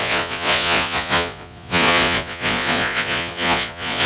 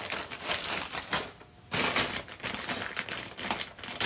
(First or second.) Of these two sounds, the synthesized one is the first